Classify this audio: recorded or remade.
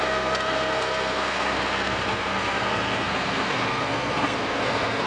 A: remade